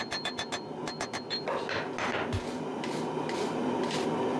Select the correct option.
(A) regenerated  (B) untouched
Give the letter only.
B